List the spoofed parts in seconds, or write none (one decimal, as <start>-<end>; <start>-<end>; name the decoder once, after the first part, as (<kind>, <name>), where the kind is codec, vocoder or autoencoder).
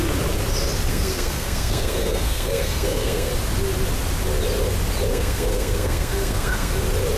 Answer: 0.9-3.3 (codec, SNAC); 5.1-6.7